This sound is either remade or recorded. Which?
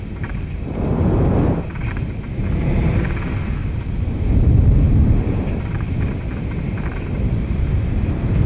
recorded